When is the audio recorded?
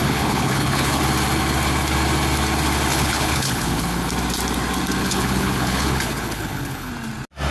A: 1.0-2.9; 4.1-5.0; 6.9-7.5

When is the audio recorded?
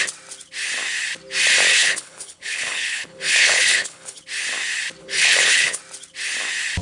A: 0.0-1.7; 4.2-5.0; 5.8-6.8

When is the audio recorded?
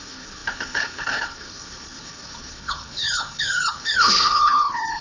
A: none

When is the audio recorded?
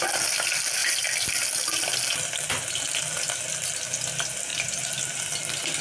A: 0.0-5.8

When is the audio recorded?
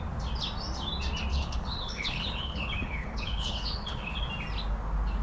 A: 0.0-1.3; 4.2-5.2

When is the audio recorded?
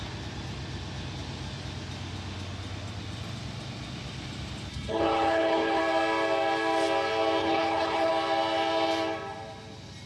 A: 0.0-4.7; 5.8-7.4; 8.1-10.1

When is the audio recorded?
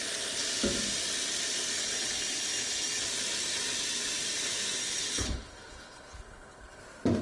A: 0.0-1.8; 3.0-4.8; 6.8-7.2